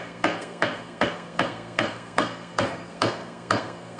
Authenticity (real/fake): fake